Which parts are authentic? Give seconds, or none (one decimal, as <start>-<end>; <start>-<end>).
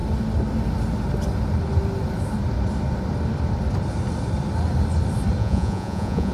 0.0-5.4